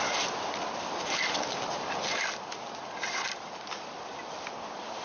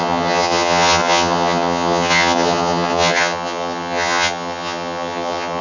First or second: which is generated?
second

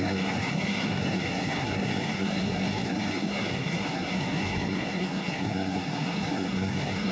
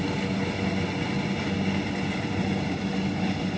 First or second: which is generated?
first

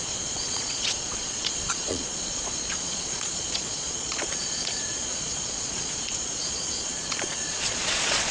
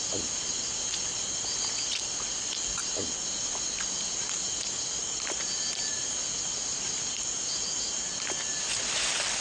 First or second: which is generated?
first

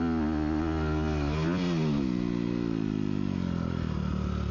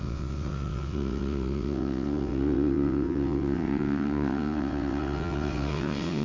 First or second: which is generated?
second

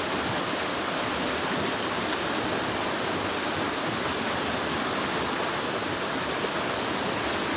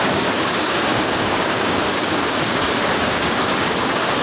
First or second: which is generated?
second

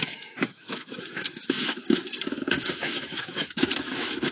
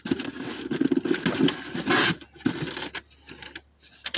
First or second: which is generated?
first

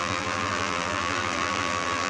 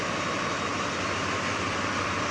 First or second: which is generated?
first